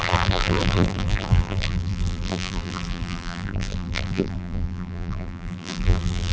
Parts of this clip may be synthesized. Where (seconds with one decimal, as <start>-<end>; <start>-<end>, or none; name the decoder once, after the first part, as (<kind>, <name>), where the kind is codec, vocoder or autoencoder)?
0.0-6.3 (vocoder, BigVGAN v2)